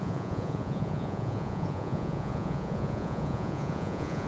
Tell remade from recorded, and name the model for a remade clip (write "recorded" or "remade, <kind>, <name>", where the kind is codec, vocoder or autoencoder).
remade, vocoder, Vocos